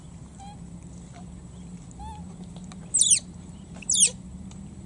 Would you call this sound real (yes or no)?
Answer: yes